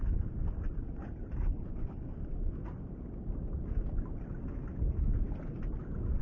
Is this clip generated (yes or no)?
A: no